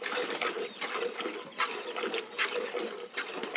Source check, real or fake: real